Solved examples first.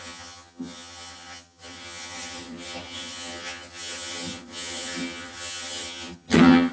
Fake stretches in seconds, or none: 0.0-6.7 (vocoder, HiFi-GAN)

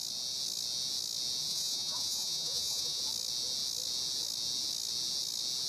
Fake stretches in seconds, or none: 1.5-3.0 (vocoder, Vocos)

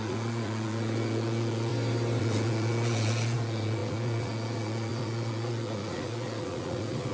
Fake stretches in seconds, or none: 0.0-1.7 (vocoder, Vocos); 2.2-7.1